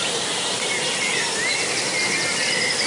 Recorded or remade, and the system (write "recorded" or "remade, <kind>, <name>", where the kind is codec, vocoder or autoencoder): recorded